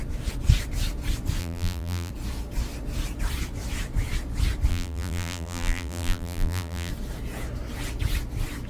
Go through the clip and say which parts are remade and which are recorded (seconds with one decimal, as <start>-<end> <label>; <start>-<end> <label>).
0.0-1.4 recorded; 1.4-2.1 remade; 2.1-4.7 recorded; 4.7-6.9 remade; 6.9-8.7 recorded